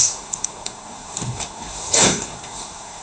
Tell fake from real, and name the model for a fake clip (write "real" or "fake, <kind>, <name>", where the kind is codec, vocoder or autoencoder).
fake, codec, SNAC